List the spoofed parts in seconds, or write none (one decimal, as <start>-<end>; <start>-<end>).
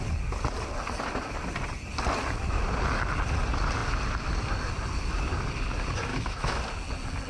6.1-6.6